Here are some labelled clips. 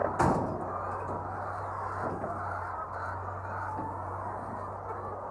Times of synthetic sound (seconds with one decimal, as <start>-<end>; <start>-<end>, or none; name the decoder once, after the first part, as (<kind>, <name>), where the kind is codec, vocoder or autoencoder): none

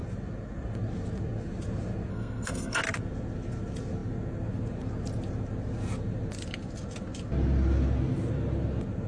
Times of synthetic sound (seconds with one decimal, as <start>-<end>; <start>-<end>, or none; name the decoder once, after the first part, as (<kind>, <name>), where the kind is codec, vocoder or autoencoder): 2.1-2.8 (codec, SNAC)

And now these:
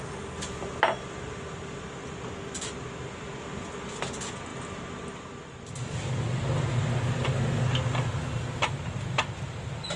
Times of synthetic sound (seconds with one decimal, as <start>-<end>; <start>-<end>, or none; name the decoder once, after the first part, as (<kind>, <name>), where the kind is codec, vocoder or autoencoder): none

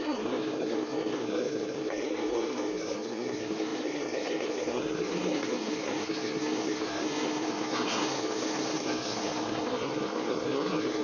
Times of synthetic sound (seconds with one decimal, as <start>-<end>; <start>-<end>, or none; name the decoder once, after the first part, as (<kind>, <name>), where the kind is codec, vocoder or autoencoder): 0.0-11.0 (codec, SNAC)